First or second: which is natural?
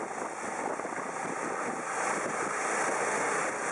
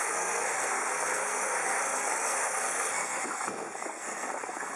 first